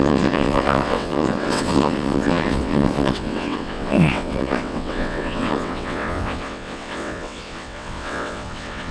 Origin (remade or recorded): remade